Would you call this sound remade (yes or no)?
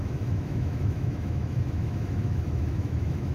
yes